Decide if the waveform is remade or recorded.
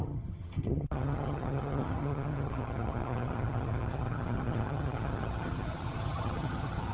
remade